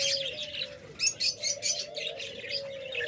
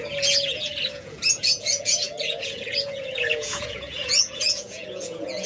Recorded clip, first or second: first